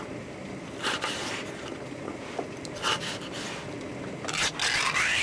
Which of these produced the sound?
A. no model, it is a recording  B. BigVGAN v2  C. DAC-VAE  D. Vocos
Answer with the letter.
B